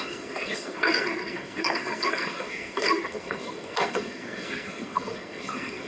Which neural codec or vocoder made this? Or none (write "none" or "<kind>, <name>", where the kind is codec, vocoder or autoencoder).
codec, SNAC